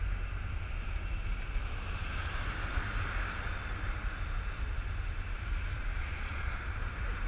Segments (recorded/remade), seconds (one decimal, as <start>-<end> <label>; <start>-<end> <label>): 0.0-6.0 recorded; 6.0-6.6 remade; 6.6-7.3 recorded